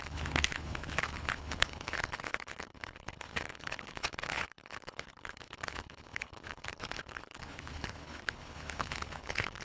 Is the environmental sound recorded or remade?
remade